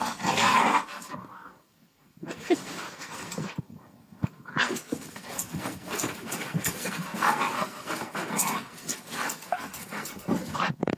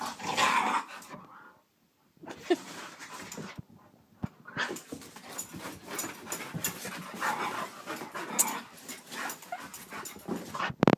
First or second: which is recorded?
second